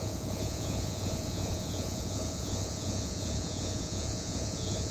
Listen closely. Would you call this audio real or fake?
fake